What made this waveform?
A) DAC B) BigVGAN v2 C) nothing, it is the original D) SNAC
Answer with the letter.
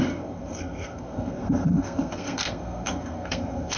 D